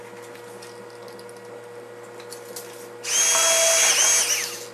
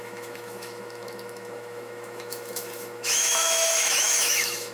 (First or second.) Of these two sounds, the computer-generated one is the second